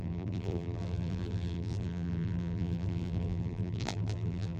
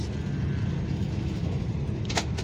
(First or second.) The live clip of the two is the second